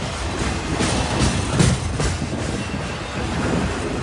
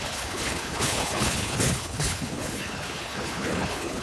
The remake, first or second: second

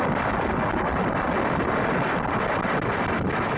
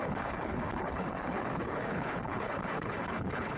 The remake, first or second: second